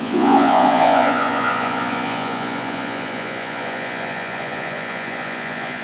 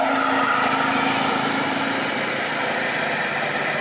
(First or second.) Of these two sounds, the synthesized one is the first